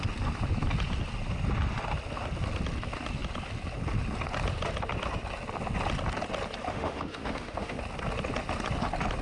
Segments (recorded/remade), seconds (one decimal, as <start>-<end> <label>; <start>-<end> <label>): 0.0-6.7 recorded; 6.7-7.8 remade; 7.8-9.2 recorded